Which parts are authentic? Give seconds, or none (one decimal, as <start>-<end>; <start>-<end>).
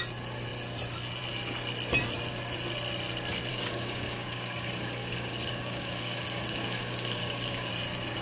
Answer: 0.0-3.5; 7.7-8.2